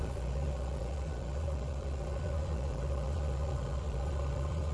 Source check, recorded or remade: remade